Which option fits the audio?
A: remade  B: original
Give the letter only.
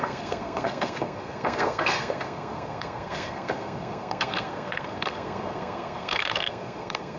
A